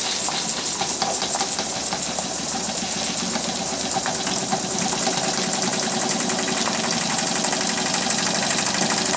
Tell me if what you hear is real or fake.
real